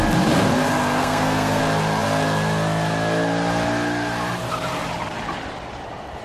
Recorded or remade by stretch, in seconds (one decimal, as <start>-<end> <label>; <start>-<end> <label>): 0.0-1.0 recorded; 1.0-1.6 remade; 1.6-6.2 recorded

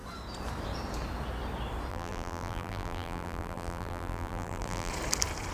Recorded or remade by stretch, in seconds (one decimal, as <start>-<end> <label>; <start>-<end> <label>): 0.0-1.9 recorded; 1.9-4.9 remade; 4.9-5.5 recorded

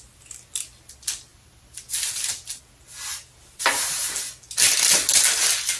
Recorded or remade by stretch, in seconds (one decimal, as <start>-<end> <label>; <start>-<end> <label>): 0.0-3.1 recorded; 3.1-4.1 remade; 4.1-5.8 recorded

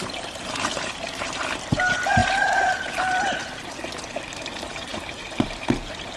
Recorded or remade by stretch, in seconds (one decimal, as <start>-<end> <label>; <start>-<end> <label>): 0.0-3.4 remade; 3.4-4.2 recorded; 4.2-6.2 remade

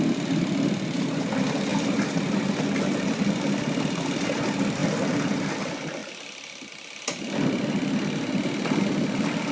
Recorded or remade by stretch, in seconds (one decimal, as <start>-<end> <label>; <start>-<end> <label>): 0.0-1.7 recorded; 1.7-2.6 remade; 2.6-9.5 recorded

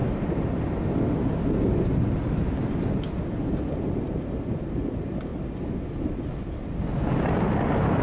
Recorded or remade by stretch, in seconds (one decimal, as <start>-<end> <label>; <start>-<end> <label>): 0.0-8.0 recorded